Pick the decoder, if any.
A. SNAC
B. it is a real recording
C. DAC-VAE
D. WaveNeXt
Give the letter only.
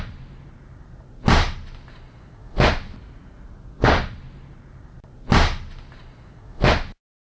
B